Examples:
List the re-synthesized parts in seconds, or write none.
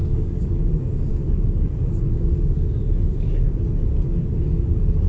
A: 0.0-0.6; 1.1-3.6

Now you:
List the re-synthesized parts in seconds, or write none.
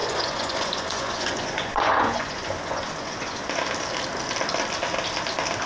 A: 0.0-3.4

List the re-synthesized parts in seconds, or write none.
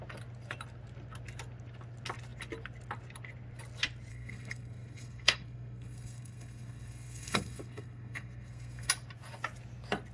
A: 4.1-8.9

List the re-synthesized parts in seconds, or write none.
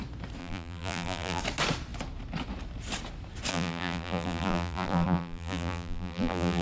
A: 0.4-1.4; 3.5-6.6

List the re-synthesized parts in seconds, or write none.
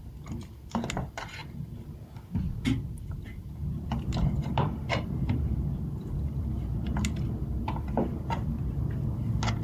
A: none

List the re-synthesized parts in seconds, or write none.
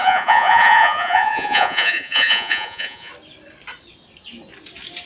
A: 0.0-3.1